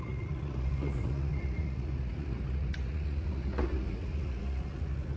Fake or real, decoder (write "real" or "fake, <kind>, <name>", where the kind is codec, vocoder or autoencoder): fake, vocoder, Vocos